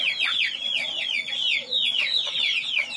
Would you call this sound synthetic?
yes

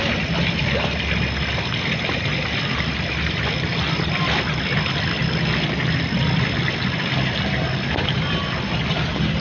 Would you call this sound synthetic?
no